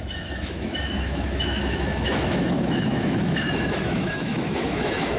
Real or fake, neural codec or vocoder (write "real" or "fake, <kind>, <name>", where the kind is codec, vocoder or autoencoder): fake, autoencoder, DAC-VAE